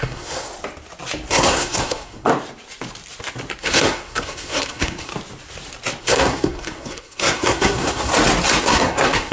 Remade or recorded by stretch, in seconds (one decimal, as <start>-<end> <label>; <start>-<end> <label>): 0.0-0.5 remade; 0.5-1.3 recorded; 1.3-2.3 remade; 2.3-3.6 recorded; 3.6-5.1 remade; 5.1-6.0 recorded; 6.0-8.1 remade; 8.1-8.6 recorded; 8.6-9.3 remade